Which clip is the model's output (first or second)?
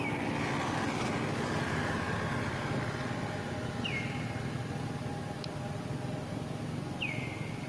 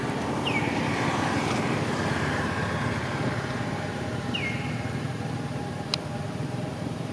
second